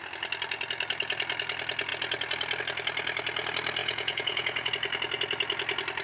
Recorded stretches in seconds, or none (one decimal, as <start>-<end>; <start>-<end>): 0.0-3.8; 4.7-6.0